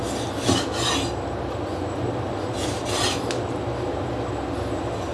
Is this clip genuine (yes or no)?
yes